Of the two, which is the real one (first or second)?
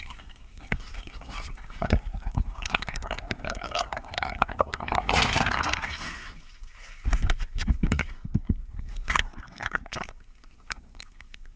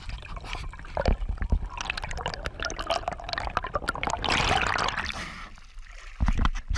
second